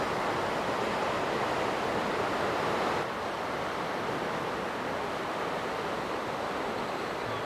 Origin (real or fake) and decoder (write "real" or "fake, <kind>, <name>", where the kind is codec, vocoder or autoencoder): real